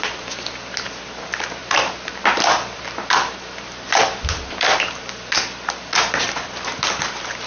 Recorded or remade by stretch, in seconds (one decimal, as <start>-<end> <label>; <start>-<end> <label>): 0.0-1.6 recorded; 1.6-2.1 remade; 2.1-7.5 recorded

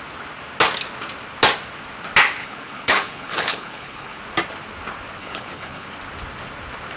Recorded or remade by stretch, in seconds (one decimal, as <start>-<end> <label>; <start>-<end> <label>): 0.0-2.4 recorded; 2.4-4.2 remade; 4.2-5.2 recorded; 5.2-5.9 remade; 5.9-7.0 recorded

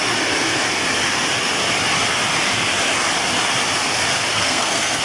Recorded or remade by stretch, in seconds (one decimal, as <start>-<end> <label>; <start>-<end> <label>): 0.0-4.3 recorded; 4.3-5.0 remade

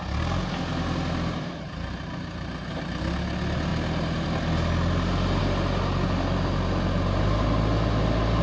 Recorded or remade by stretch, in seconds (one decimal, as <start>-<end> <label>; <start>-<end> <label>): 0.0-8.4 recorded

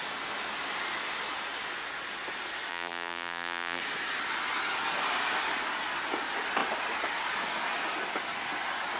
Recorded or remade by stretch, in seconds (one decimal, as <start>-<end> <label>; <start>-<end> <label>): 0.0-2.7 recorded; 2.7-3.8 remade; 3.8-9.0 recorded